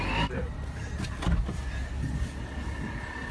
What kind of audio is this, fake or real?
real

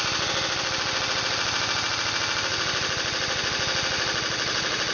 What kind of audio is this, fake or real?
real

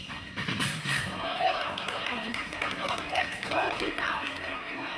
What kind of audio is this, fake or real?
fake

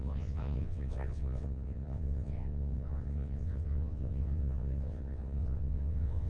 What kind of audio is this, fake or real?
fake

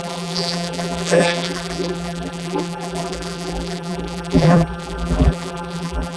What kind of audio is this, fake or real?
fake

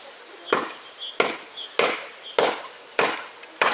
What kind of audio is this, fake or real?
real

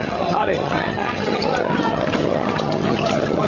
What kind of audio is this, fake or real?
fake